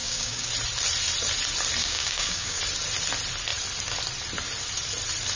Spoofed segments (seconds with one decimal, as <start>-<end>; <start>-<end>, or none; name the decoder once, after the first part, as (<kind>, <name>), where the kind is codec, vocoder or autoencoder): 0.0-0.5 (codec, DAC); 1.8-2.6